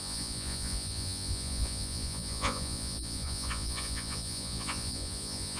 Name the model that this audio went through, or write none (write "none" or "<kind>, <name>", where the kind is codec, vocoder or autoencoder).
vocoder, Vocos